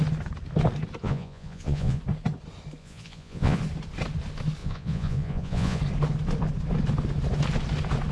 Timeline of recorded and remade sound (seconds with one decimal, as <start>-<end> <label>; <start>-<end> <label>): 0.0-1.0 recorded; 1.0-2.0 remade; 2.0-2.8 recorded; 2.8-3.6 remade; 3.6-4.6 recorded; 4.6-5.8 remade; 5.8-8.1 recorded